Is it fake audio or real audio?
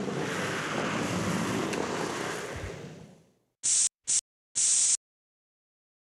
real